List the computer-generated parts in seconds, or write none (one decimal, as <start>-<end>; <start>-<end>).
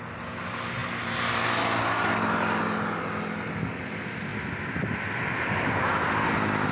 none